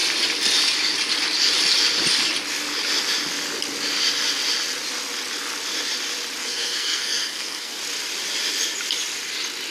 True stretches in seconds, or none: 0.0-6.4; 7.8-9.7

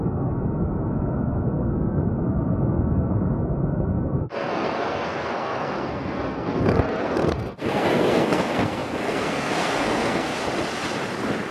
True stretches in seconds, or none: 10.3-11.5